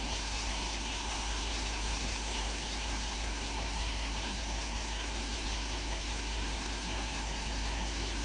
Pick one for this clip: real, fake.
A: fake